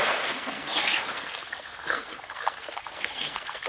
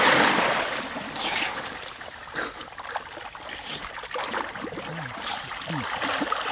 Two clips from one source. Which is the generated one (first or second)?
first